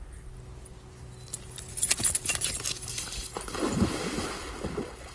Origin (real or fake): real